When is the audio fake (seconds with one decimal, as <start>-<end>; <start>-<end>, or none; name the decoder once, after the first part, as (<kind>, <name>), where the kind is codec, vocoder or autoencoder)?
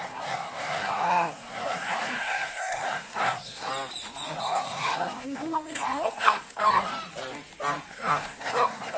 0.0-3.7 (codec, SNAC); 4.4-6.9; 7.9-9.0